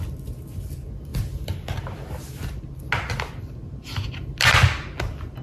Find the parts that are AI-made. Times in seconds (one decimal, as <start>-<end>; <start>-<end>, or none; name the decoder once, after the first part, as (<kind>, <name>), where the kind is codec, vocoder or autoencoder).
none